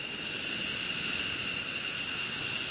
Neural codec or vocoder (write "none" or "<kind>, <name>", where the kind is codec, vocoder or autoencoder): none